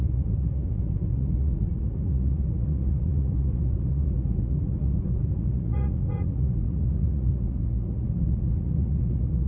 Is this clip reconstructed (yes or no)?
yes